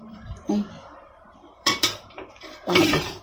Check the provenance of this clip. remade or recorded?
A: remade